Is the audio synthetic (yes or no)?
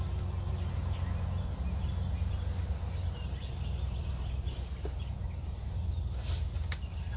no